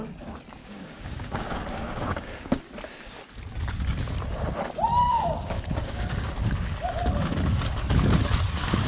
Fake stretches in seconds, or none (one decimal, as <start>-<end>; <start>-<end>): 0.6-2.6; 5.0-6.0